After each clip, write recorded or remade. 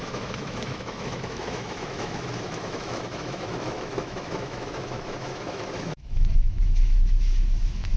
remade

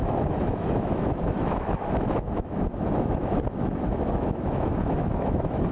remade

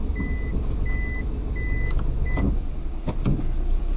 recorded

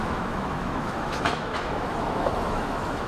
remade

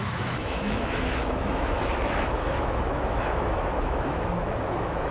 remade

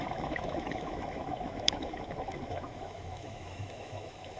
remade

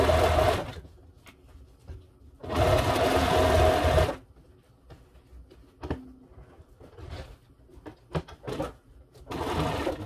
recorded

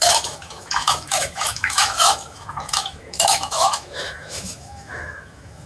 remade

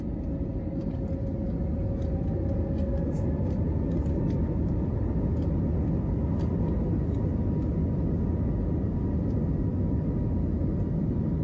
recorded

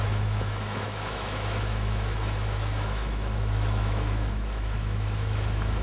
remade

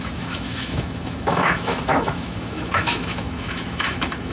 remade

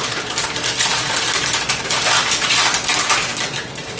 recorded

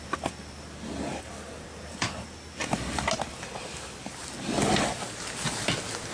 recorded